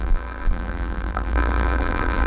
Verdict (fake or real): fake